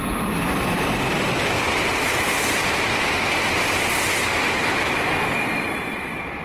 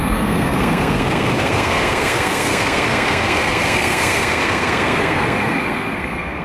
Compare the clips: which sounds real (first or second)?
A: first